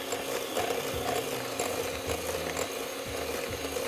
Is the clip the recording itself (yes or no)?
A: yes